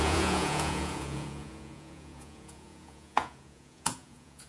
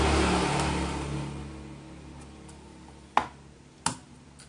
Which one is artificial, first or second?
first